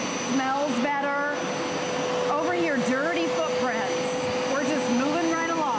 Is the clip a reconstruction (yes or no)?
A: no